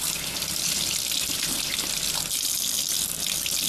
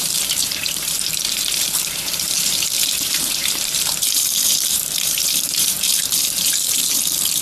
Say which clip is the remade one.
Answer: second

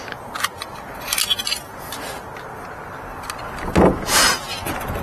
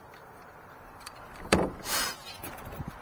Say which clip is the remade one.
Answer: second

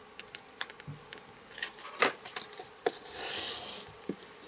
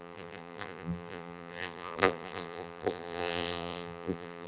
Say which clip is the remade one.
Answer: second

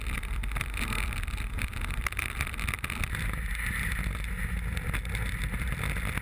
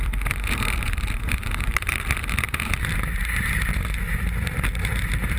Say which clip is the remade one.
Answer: second